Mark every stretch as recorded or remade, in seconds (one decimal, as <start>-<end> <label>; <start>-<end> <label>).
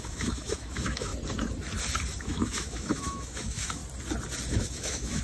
0.0-1.1 remade; 1.1-2.2 recorded; 2.2-3.8 remade; 3.8-4.5 recorded; 4.5-5.2 remade